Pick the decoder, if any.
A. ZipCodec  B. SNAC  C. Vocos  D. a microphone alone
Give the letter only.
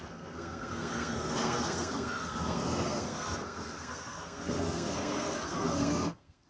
B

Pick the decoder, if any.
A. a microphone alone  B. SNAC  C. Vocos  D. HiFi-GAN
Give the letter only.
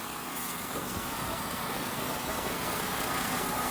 B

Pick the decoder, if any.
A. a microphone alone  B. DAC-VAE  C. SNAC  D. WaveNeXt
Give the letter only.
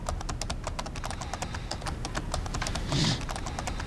A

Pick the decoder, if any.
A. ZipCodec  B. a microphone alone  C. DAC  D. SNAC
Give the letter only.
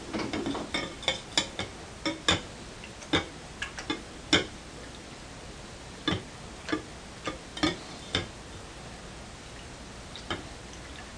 B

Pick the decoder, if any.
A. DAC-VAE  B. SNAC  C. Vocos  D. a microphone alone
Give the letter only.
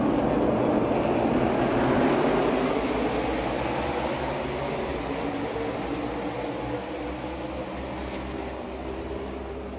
D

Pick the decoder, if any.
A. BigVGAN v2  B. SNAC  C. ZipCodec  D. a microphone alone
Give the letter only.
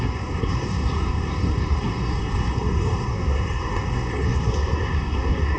B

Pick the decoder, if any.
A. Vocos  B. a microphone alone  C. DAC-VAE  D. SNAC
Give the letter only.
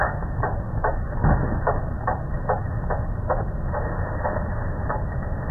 B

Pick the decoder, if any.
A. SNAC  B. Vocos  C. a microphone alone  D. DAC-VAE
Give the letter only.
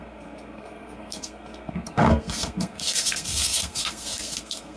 A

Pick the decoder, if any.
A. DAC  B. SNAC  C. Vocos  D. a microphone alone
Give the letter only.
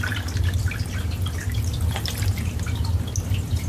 D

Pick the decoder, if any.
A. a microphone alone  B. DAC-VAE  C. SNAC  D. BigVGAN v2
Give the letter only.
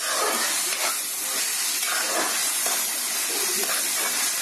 A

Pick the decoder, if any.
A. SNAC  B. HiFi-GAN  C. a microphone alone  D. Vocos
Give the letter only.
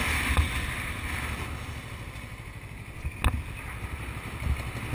C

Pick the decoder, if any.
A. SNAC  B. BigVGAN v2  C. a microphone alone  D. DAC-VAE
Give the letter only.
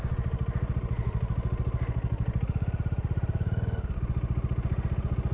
C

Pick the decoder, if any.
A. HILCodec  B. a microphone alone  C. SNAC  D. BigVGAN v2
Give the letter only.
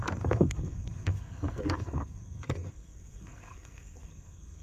C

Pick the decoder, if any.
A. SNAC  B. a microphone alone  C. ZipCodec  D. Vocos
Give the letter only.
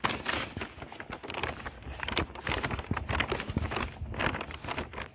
B